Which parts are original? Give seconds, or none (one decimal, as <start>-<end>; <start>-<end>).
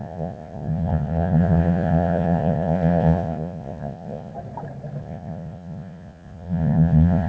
4.3-5.0